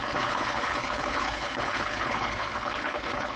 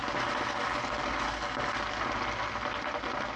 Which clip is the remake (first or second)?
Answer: first